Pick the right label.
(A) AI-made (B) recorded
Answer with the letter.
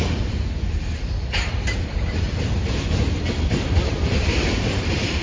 A